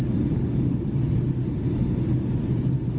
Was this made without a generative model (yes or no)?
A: yes